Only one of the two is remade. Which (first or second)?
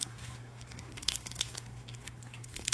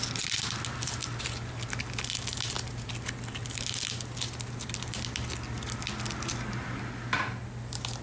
first